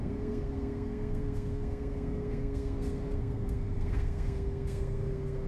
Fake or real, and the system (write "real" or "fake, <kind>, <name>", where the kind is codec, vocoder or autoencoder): fake, codec, SNAC